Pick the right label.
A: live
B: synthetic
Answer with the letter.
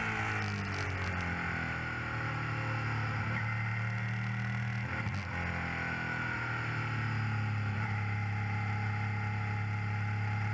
A